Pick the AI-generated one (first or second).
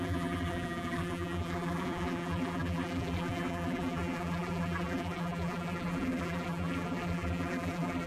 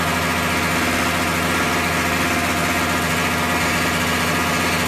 first